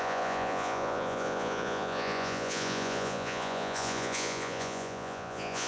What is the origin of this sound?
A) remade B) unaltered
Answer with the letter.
A